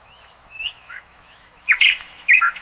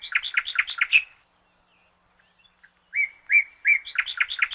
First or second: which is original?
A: second